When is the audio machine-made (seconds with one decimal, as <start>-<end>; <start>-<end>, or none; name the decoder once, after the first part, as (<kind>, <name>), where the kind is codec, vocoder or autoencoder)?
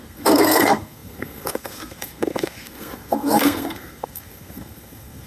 0.0-5.3 (codec, SNAC)